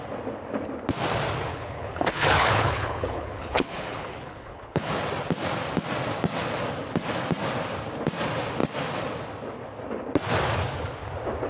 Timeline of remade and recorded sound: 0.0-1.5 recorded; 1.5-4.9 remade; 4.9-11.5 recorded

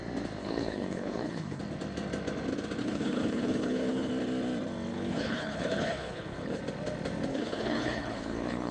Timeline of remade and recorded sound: 0.0-0.4 recorded; 0.4-1.6 remade; 1.6-2.8 recorded; 2.8-4.1 remade; 4.1-4.9 recorded; 4.9-6.6 remade; 6.6-7.3 recorded; 7.3-8.7 remade

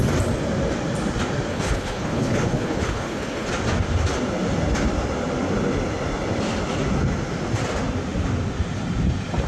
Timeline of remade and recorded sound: 0.0-1.5 recorded; 1.5-3.5 remade; 3.5-9.5 recorded